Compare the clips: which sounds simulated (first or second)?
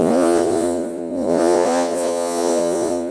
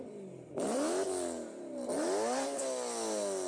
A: first